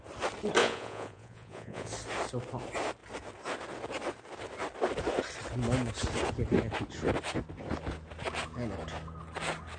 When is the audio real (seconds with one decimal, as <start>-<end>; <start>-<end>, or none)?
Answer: 0.0-0.6; 1.9-9.8